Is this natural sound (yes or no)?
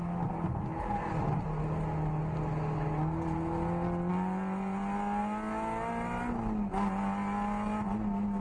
yes